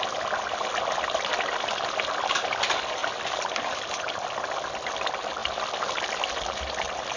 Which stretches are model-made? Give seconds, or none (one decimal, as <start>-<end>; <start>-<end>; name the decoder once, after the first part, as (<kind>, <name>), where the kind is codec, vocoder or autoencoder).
none